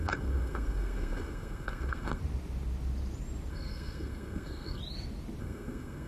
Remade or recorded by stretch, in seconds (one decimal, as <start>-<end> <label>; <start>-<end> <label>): 0.0-2.2 remade; 2.2-3.5 recorded; 3.5-4.8 remade; 4.8-5.4 recorded; 5.4-6.1 remade